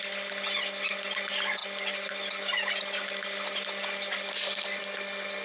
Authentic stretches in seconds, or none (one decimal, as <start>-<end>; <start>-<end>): 0.0-5.4